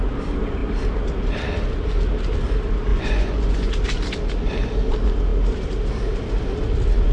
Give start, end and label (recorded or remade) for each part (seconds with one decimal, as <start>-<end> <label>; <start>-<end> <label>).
0.0-2.9 recorded; 2.9-3.7 remade; 3.7-7.1 recorded